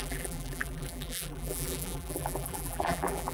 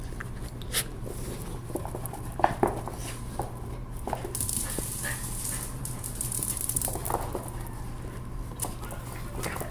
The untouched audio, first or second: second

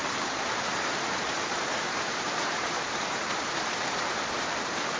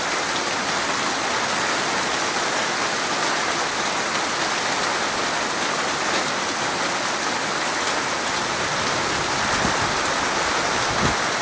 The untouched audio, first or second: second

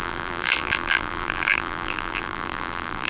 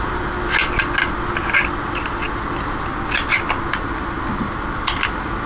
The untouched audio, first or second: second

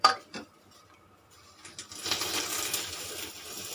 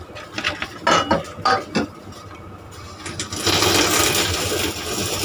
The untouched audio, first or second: second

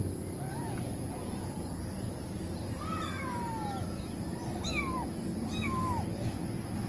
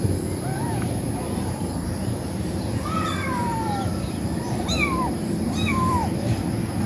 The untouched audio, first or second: first